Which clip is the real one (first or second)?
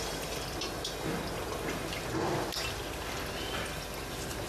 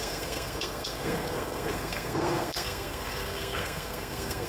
first